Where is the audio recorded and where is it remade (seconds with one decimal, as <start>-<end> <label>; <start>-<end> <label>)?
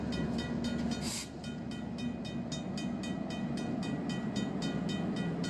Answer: 0.0-5.5 recorded